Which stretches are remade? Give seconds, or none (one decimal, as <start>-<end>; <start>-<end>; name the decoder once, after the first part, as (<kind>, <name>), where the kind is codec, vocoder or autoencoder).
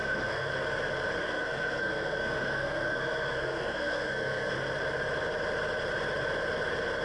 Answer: 0.0-0.5 (codec, SNAC); 1.2-4.5